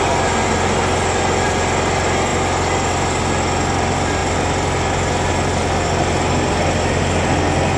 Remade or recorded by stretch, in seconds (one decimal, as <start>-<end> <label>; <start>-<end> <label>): 0.0-7.8 recorded